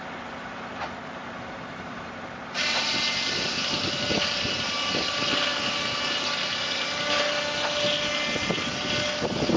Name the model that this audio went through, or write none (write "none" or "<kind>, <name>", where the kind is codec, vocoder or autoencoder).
none